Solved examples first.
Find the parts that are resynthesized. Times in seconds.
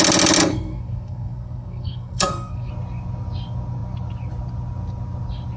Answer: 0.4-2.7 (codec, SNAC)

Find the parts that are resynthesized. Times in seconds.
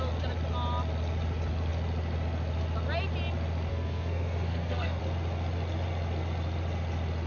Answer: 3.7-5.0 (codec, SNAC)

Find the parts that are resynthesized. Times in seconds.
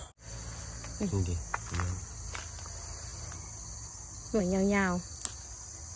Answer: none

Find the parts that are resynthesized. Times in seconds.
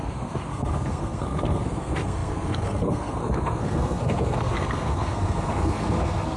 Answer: 0.0-6.4 (codec, SNAC)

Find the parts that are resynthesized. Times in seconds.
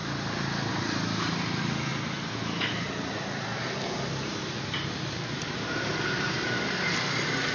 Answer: none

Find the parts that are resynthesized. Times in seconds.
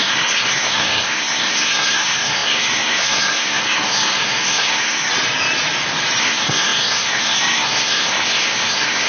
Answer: 0.0-5.1 (codec, SNAC); 6.2-9.1